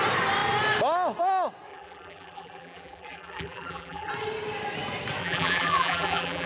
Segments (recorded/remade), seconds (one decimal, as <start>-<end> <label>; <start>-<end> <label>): 0.0-1.7 recorded; 1.7-4.1 remade; 4.1-5.2 recorded; 5.2-6.5 remade

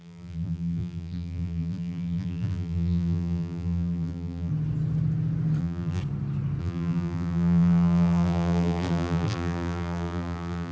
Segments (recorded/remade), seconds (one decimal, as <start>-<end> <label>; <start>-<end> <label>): 0.0-4.5 remade; 4.5-5.6 recorded; 5.6-6.0 remade; 6.0-6.6 recorded; 6.6-10.7 remade

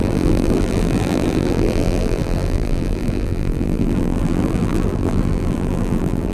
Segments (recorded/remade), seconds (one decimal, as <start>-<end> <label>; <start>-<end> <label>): 0.0-6.3 remade

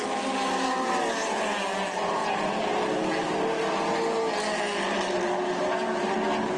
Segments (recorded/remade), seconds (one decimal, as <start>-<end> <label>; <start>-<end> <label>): 0.0-6.6 recorded

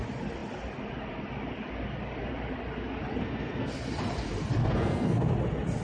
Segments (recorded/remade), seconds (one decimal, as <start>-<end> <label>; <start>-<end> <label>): 0.0-3.2 recorded; 3.2-3.7 remade; 3.7-4.6 recorded; 4.6-5.3 remade; 5.3-5.8 recorded

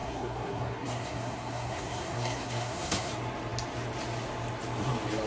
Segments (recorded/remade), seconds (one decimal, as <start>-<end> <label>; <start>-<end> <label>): 0.0-3.1 remade; 3.1-5.3 recorded

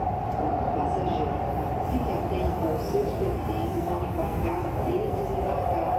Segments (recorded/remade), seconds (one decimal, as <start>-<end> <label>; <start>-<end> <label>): 0.0-2.5 recorded; 2.5-5.2 remade; 5.2-6.0 recorded

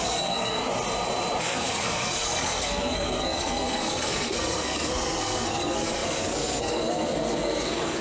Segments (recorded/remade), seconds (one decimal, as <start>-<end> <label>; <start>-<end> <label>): 0.0-0.6 remade; 0.6-1.4 recorded; 1.4-8.0 remade